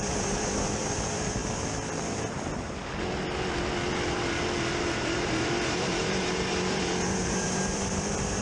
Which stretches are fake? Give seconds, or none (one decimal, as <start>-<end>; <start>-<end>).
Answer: 0.0-1.4; 4.8-8.4